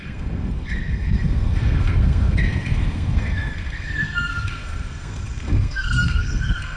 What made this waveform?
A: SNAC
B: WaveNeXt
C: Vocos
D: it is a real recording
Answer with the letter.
A